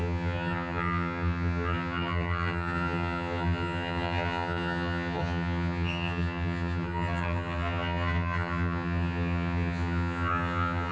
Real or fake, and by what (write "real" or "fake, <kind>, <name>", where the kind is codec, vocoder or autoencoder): fake, vocoder, HiFi-GAN